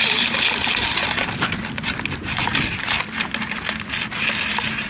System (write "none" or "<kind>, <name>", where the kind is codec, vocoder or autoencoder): none